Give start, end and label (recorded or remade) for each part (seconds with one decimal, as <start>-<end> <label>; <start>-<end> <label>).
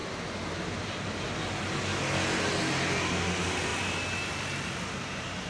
0.0-5.5 recorded